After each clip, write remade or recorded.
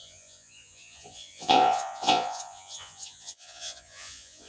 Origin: remade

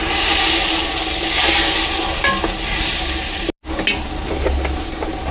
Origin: recorded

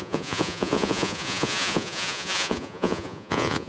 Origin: remade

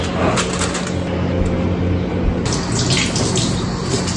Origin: recorded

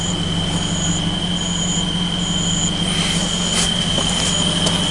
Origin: recorded